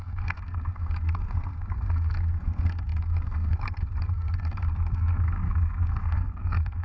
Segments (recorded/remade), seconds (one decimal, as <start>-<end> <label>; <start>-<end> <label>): 0.0-6.8 remade

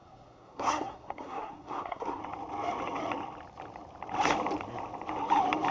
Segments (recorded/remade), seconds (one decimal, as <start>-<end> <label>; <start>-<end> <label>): 0.0-2.2 remade; 2.2-5.7 recorded